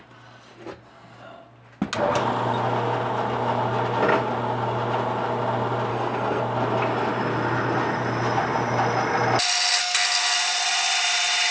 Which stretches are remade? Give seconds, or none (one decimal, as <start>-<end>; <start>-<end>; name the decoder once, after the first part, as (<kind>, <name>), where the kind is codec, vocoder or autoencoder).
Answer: 5.9-6.4 (codec, SNAC)